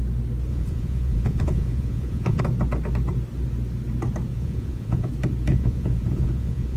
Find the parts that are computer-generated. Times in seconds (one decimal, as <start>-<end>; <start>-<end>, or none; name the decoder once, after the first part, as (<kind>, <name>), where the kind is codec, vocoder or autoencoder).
0.5-2.4 (vocoder, Vocos); 4.3-5.1; 5.5-6.8